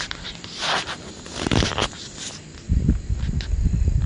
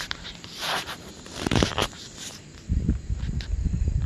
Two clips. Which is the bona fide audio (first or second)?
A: first